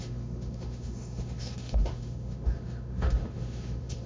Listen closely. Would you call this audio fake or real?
fake